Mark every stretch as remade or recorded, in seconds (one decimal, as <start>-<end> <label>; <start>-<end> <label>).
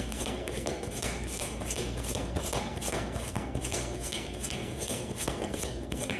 0.0-6.2 remade